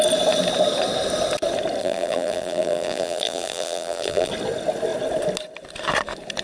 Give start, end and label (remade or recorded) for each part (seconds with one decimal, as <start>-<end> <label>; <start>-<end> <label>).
0.0-1.8 recorded; 1.8-4.3 remade; 4.3-6.4 recorded